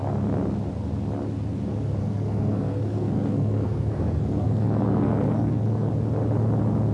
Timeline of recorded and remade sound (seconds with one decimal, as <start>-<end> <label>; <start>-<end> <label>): 0.0-2.0 recorded; 2.0-5.9 remade; 5.9-6.9 recorded

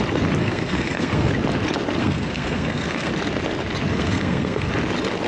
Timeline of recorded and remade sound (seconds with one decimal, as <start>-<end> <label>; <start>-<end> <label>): 0.0-0.4 recorded; 0.4-1.3 remade; 1.3-2.0 recorded; 2.0-3.1 remade; 3.1-3.9 recorded; 3.9-4.7 remade; 4.7-5.3 recorded

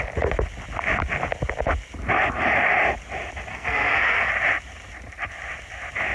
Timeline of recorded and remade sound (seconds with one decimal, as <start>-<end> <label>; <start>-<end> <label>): 0.0-3.5 recorded; 3.5-4.3 remade; 4.3-6.1 recorded

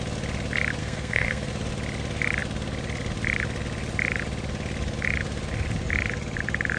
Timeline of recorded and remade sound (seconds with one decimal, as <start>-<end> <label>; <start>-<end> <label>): 0.0-0.8 recorded; 0.8-1.5 remade; 1.5-6.8 recorded